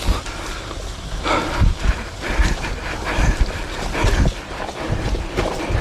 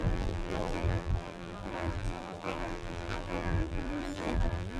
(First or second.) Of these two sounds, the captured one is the first